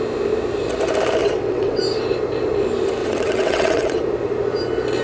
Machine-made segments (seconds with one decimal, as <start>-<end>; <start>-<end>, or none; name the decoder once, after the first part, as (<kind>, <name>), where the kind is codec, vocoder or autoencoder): 1.2-1.8 (vocoder, WaveNeXt); 3.0-4.0